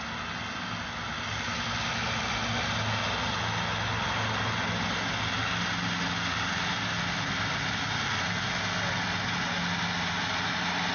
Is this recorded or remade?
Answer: recorded